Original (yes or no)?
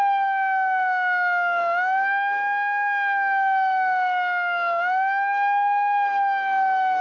no